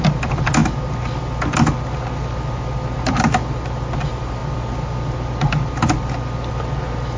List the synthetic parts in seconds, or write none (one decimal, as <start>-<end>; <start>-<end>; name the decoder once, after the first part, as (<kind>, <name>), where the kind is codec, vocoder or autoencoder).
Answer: none